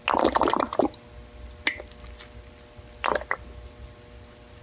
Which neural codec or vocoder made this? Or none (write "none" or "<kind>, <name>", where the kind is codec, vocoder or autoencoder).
none